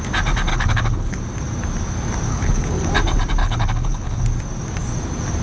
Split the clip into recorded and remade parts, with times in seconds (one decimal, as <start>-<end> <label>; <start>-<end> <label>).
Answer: 0.0-0.5 recorded; 0.5-1.2 remade; 1.2-2.3 recorded; 2.3-2.9 remade; 2.9-3.4 recorded; 3.4-4.2 remade; 4.2-5.4 recorded